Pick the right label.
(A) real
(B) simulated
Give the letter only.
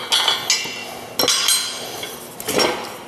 A